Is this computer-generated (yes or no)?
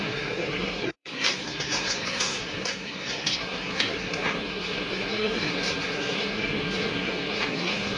yes